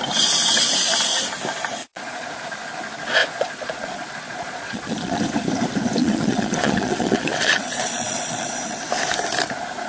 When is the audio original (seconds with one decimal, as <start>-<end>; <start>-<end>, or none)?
0.0-1.8; 2.4-3.2; 5.2-6.0; 8.8-9.9